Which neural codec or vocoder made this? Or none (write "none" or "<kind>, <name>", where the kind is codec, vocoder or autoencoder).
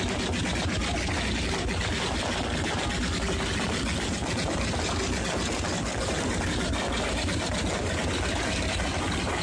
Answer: none